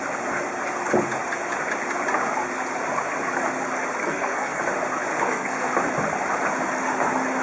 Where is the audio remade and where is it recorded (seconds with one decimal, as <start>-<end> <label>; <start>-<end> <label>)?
0.0-4.0 recorded; 4.0-4.6 remade; 4.6-5.1 recorded; 5.1-5.7 remade; 5.7-7.4 recorded